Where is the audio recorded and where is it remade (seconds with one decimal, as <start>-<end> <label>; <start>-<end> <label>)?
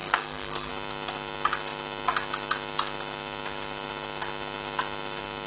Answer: 0.0-0.7 remade; 0.7-5.5 recorded